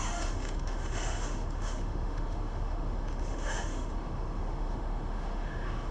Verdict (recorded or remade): remade